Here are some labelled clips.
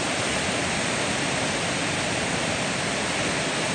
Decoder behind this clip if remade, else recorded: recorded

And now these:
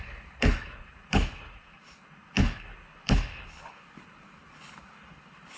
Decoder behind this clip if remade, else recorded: remade, codec, HILCodec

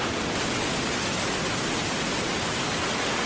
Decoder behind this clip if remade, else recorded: recorded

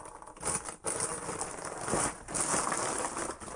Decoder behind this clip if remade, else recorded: recorded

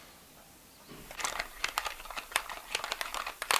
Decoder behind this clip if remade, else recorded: recorded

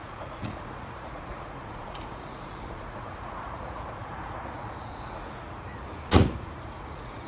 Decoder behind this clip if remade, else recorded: remade, vocoder, Vocos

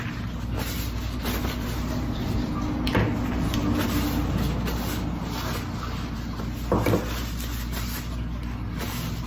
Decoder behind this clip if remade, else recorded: recorded